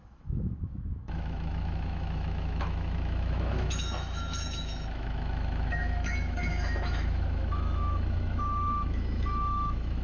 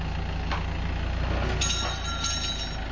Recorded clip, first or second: second